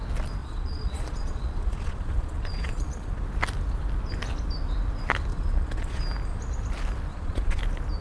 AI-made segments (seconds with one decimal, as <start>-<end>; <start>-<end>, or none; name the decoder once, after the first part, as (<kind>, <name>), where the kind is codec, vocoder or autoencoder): 0.4-3.2 (vocoder, Vocos); 5.3-6.0; 7.1-7.6